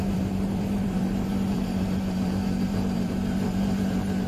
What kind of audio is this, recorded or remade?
remade